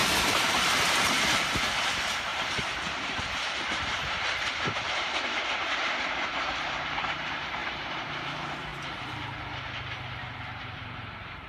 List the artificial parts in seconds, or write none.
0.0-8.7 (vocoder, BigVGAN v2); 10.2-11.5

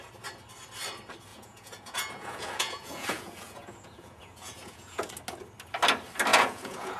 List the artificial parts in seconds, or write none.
1.3-5.1 (vocoder, Vocos); 6.3-7.0

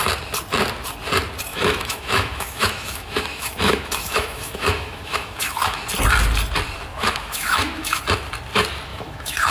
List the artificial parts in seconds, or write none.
1.5-5.8 (autoencoder, DAC-VAE); 6.9-8.0; 8.9-9.5